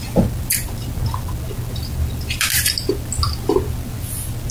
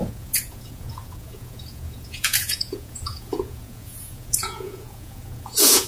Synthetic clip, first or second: second